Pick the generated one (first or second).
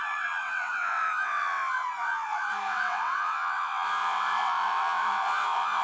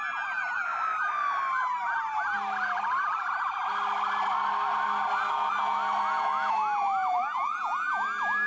first